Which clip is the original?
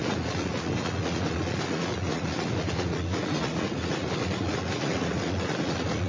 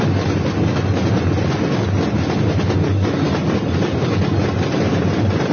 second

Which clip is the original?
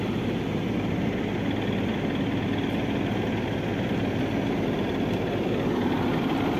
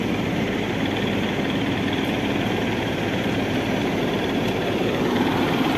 first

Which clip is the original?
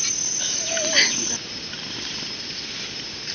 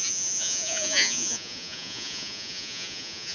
first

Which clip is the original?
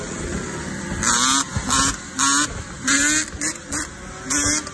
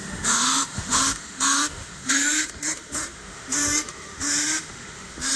first